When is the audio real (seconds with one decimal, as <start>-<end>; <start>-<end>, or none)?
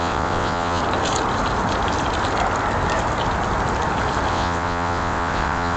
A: 0.8-4.3